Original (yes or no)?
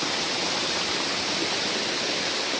yes